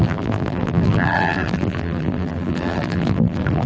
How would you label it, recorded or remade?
remade